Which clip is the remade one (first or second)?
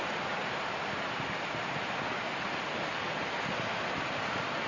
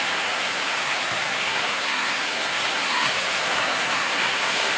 second